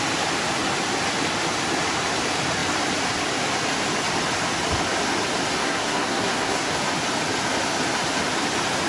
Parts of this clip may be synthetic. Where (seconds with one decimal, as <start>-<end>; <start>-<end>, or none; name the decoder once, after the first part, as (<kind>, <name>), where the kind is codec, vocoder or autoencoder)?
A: 5.6-6.7 (codec, SNAC)